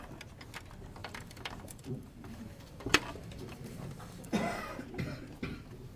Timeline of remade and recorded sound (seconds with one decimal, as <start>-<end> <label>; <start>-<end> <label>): 0.0-1.0 recorded; 1.0-4.6 remade; 4.6-6.0 recorded